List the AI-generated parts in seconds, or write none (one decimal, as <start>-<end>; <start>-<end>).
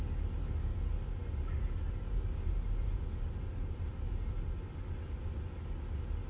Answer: none